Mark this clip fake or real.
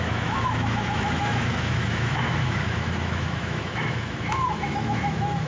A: fake